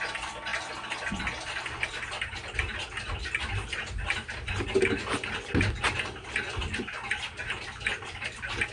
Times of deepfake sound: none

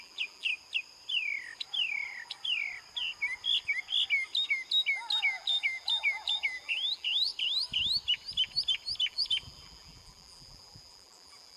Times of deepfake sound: 0.0-0.5 (vocoder, BigVGAN v2); 5.2-7.3; 9.1-11.6

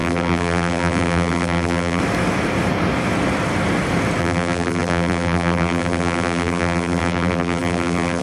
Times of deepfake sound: 0.0-2.0 (vocoder, BigVGAN v2); 4.2-8.2